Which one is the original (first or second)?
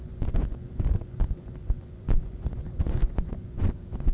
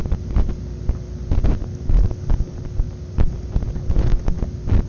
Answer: second